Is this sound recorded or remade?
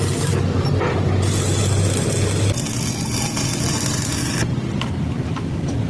recorded